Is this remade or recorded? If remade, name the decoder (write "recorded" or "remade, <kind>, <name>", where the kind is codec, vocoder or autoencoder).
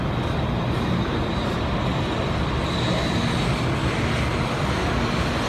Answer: recorded